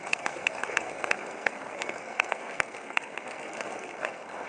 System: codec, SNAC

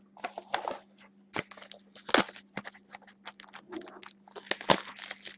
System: none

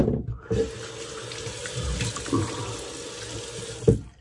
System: none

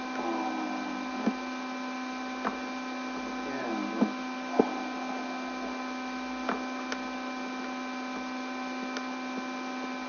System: none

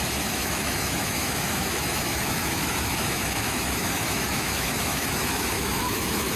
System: autoencoder, DAC-VAE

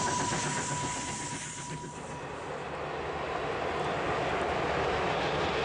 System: none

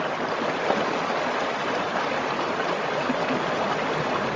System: none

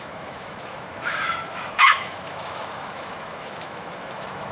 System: autoencoder, DAC-VAE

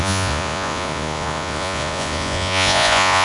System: vocoder, Vocos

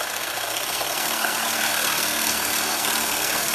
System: codec, SNAC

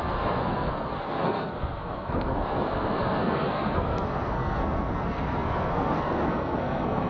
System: codec, SNAC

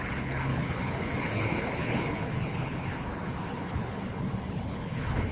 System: codec, HILCodec